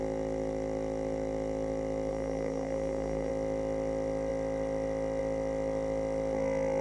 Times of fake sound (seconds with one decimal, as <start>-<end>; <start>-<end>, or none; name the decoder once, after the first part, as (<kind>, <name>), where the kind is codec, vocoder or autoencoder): 2.1-3.3 (codec, SNAC)